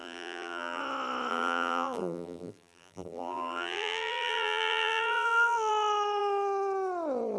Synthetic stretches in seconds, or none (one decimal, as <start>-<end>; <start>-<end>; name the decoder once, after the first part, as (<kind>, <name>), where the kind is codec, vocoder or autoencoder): 0.0-0.8 (vocoder, BigVGAN v2); 1.3-5.7